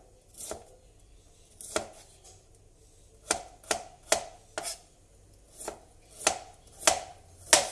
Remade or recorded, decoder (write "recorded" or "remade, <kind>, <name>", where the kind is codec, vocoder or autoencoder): recorded